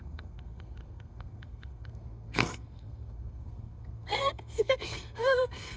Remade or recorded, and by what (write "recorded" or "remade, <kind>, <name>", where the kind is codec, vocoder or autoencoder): remade, codec, SNAC